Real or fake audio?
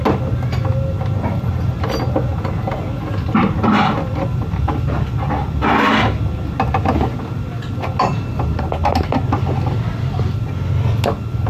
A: real